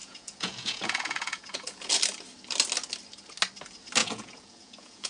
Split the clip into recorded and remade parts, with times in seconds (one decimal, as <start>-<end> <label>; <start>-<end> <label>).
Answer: 0.0-1.9 remade; 1.9-4.0 recorded; 4.0-5.1 remade